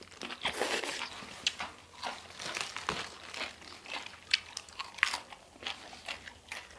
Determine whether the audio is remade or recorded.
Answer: recorded